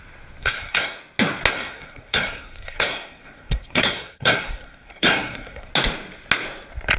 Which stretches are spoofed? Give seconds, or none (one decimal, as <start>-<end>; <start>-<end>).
0.4-1.0; 1.5-5.7